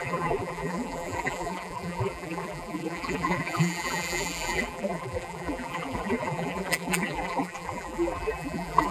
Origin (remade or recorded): remade